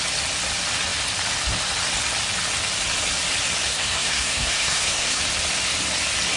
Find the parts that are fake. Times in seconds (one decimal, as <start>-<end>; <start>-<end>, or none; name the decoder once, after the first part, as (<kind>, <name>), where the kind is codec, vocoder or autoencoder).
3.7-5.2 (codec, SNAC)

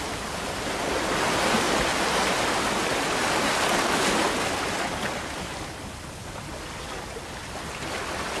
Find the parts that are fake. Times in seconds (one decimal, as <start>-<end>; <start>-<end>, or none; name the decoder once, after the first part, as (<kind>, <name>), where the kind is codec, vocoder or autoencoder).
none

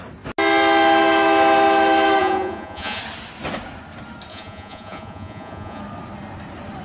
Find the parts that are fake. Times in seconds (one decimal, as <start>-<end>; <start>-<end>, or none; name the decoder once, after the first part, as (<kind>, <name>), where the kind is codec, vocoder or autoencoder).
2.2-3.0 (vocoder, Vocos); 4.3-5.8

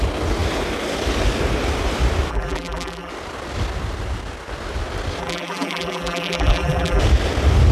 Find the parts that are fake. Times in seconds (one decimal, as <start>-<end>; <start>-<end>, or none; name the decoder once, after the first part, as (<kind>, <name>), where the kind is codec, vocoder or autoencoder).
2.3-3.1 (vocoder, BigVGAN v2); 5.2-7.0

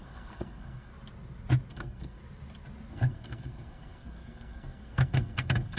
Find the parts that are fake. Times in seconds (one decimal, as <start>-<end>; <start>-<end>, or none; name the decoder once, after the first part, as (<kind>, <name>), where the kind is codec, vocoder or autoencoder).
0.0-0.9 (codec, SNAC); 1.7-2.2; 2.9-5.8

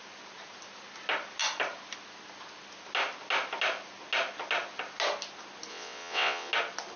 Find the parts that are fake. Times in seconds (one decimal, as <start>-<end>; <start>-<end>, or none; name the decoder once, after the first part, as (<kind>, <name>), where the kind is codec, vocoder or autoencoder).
5.7-6.5 (vocoder, WaveNeXt)

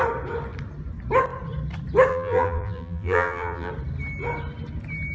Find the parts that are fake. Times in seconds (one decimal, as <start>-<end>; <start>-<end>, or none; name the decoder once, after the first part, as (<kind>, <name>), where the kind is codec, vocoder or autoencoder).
2.1-3.7 (vocoder, BigVGAN v2)

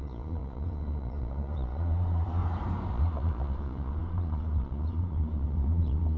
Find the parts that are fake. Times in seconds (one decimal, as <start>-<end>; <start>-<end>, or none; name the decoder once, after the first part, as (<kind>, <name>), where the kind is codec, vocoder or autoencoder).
0.0-2.4 (vocoder, Vocos); 2.9-6.2